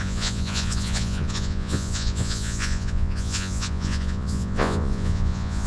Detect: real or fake fake